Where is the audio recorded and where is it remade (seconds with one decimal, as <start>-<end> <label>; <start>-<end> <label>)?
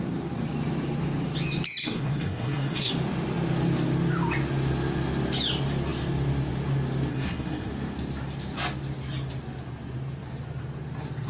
0.0-1.8 recorded; 1.8-2.9 remade; 2.9-7.1 recorded; 7.1-7.7 remade; 7.7-11.3 recorded